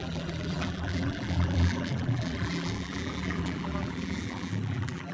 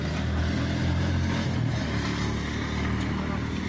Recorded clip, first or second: second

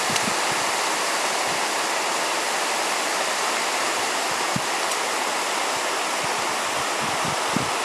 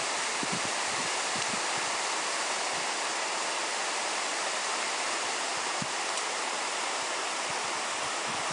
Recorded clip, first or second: first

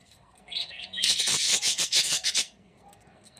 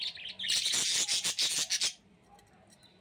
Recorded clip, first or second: second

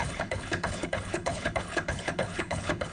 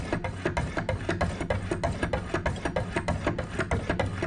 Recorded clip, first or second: second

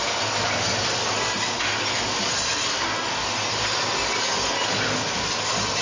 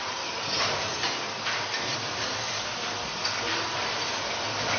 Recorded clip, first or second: first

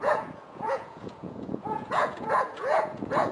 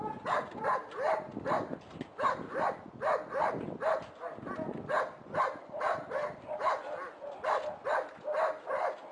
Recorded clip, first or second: second